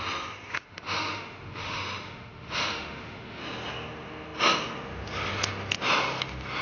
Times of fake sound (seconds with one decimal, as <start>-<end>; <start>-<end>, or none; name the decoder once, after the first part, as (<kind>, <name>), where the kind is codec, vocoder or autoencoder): 0.5-3.4 (autoencoder, DAC-VAE)